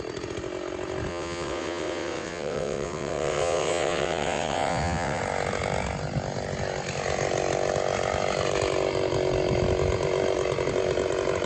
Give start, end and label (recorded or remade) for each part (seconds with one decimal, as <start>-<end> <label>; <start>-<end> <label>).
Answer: 0.0-1.1 recorded; 1.1-5.2 remade; 5.2-11.5 recorded